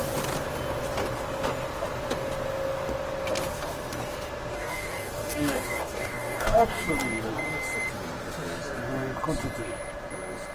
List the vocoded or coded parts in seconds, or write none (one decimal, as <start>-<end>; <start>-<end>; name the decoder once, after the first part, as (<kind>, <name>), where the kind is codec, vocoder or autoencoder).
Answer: 4.5-6.9 (codec, DAC)